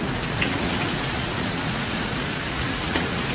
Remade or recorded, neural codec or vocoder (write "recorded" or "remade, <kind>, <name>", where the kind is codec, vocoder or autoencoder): remade, vocoder, Vocos